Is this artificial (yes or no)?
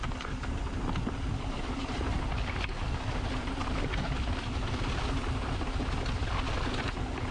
no